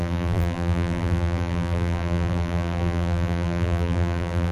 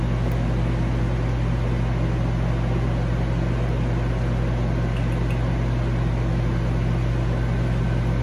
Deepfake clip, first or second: first